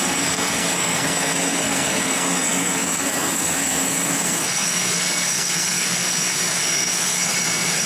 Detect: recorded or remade remade